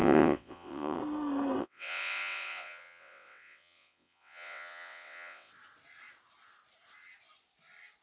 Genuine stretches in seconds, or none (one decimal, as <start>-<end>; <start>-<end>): 1.0-1.6; 5.5-8.0